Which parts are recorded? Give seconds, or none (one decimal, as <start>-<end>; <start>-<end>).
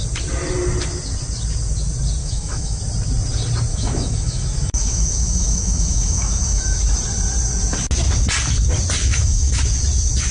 0.0-2.2; 2.8-3.7; 6.8-9.1; 9.6-10.3